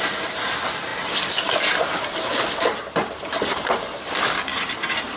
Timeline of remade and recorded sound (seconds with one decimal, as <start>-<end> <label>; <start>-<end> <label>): 0.0-4.5 recorded; 4.5-5.2 remade